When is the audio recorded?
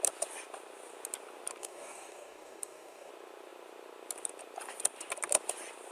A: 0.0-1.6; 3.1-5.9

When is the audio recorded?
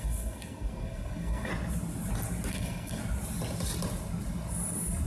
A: 1.5-2.5; 3.0-5.1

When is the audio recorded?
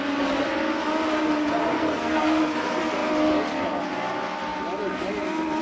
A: 0.0-1.7; 2.4-5.6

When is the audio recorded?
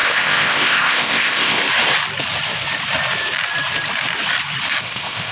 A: 1.6-4.8